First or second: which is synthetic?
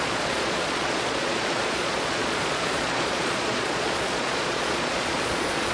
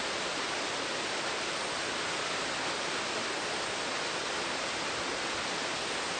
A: first